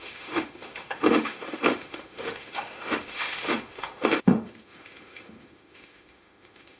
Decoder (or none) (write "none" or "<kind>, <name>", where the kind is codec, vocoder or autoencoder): autoencoder, DAC-VAE